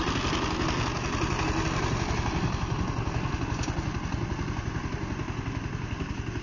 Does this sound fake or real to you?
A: real